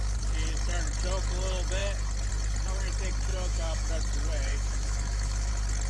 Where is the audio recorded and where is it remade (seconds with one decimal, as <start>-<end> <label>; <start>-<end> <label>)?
0.0-3.3 recorded; 3.3-3.9 remade; 3.9-4.5 recorded; 4.5-5.5 remade; 5.5-5.9 recorded